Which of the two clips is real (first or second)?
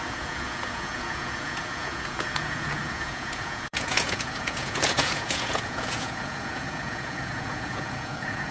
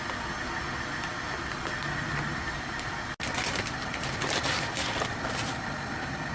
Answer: second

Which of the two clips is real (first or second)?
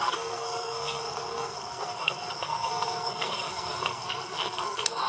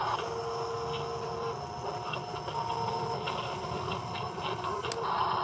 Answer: second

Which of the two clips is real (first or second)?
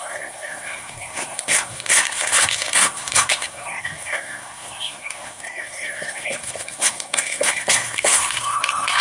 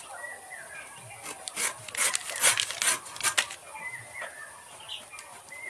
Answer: second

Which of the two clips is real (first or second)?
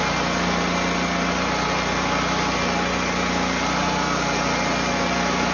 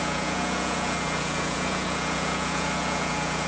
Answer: first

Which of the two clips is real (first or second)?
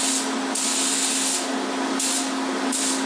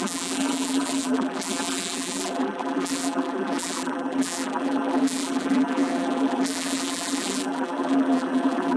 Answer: first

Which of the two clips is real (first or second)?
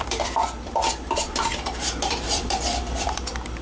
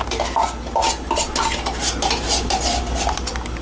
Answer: second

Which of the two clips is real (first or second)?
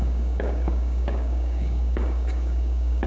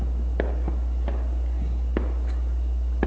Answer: second